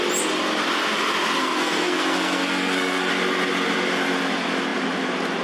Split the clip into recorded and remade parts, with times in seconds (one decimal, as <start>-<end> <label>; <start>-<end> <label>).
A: 0.0-1.4 recorded; 1.4-3.1 remade; 3.1-5.4 recorded